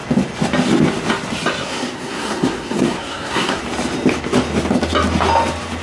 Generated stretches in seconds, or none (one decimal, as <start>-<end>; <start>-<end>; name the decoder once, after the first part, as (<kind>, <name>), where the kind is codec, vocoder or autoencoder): 1.6-3.6 (codec, SNAC)